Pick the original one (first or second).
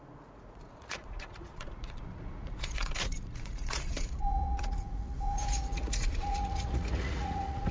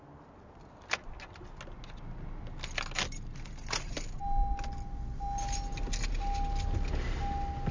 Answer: second